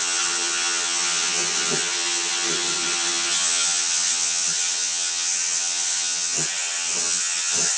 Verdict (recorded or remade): remade